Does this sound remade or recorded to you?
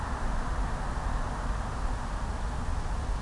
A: recorded